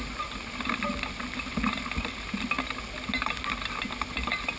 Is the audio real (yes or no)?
yes